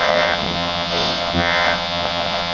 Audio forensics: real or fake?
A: fake